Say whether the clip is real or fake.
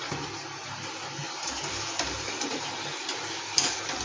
real